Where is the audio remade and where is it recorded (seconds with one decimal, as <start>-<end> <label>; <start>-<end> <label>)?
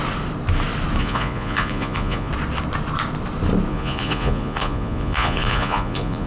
0.0-1.0 recorded; 1.0-2.3 remade; 2.3-3.7 recorded; 3.7-6.3 remade